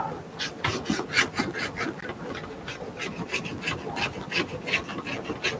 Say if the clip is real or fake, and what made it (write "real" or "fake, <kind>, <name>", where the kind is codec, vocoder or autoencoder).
real